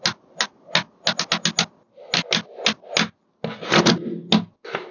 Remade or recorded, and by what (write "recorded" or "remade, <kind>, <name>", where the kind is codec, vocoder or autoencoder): recorded